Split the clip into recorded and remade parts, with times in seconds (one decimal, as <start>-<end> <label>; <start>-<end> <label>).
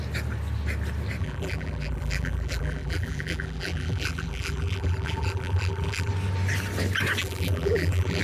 0.0-1.2 recorded; 1.2-6.1 remade; 6.1-7.2 recorded; 7.2-8.2 remade